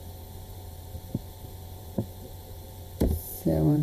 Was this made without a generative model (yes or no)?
no